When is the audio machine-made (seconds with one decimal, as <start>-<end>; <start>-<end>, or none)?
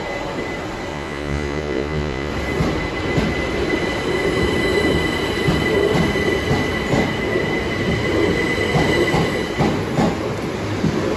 0.9-2.3